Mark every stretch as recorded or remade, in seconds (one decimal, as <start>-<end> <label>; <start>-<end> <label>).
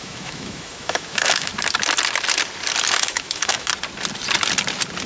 0.0-1.5 remade; 1.5-3.0 recorded; 3.0-3.7 remade; 3.7-5.1 recorded